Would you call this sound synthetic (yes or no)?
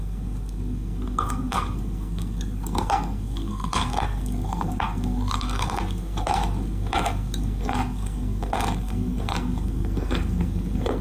yes